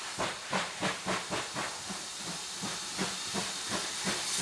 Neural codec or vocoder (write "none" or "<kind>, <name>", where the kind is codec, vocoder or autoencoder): none